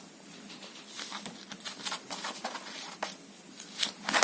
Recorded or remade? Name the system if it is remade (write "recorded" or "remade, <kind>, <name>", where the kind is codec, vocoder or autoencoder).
recorded